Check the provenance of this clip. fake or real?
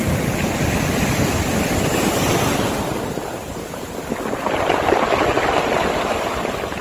real